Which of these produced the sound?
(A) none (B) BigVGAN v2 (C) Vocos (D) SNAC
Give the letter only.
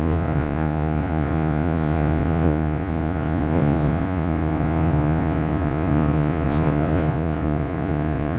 C